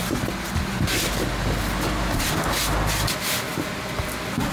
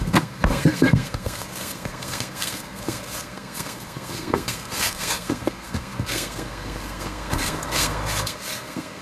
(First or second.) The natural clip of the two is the first